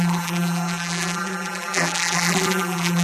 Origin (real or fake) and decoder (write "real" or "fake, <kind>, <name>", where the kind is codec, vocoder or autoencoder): fake, vocoder, BigVGAN v2